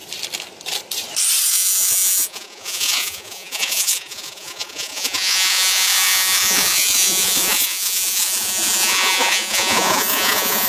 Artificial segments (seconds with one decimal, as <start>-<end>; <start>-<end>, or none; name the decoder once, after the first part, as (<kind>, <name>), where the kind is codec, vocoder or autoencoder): 1.5-10.7 (vocoder, Vocos)